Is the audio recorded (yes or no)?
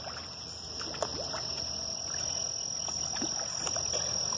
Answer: yes